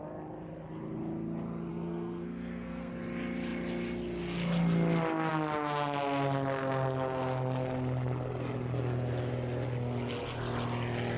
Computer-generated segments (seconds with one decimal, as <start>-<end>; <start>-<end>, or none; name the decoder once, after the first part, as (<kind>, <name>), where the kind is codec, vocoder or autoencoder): 1.7-2.9 (codec, SNAC)